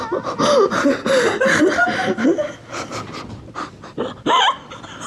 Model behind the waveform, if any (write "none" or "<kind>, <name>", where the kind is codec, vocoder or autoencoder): none